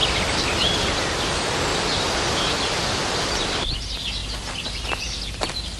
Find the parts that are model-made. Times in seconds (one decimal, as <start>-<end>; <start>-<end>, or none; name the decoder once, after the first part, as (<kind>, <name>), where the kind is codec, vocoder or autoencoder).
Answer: none